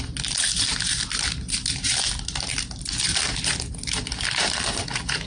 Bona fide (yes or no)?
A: yes